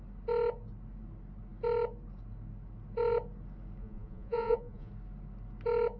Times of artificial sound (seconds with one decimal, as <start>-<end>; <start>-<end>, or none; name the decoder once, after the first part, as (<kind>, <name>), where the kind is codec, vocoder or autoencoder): 3.8-4.9 (vocoder, Vocos)